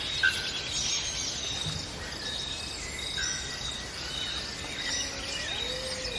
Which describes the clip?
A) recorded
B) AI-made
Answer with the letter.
A